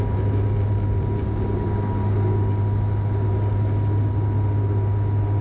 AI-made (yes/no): no